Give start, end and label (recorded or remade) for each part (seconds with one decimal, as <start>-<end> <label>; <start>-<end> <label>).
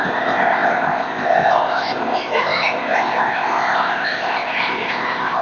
0.0-5.4 remade